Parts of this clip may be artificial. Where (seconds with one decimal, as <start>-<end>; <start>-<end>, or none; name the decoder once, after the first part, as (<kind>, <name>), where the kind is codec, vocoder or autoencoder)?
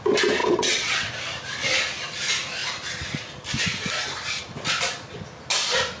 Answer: 0.4-1.1 (vocoder, WaveNeXt)